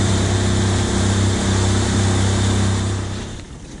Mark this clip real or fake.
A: real